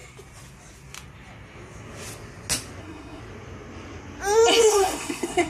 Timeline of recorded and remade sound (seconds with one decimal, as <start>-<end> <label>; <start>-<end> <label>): 0.0-2.8 recorded; 2.8-3.2 remade; 3.2-4.6 recorded; 4.6-5.5 remade